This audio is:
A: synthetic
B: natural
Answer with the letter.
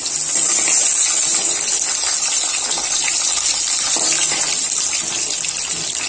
B